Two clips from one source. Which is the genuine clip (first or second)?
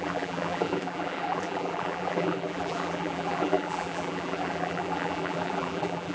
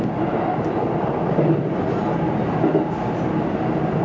second